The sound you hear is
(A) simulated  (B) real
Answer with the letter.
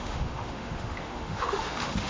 A